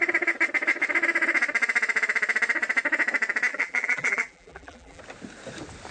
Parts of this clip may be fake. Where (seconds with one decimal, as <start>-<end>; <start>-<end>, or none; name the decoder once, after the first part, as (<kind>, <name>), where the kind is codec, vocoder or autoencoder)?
3.5-5.0 (vocoder, BigVGAN v2)